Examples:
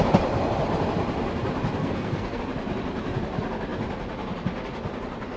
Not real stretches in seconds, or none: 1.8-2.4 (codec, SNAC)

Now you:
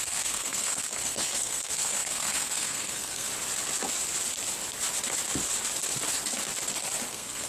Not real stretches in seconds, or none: 0.0-3.3 (codec, SNAC); 7.1-7.5

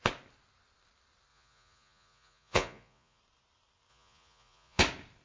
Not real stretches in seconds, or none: 1.3-3.2 (vocoder, Vocos); 3.9-4.8